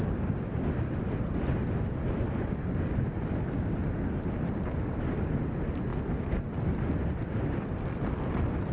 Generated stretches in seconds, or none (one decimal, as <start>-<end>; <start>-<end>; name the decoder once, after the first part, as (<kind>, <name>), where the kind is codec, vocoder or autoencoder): none